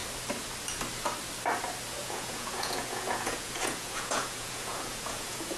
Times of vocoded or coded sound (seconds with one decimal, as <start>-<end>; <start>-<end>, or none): 2.0-5.6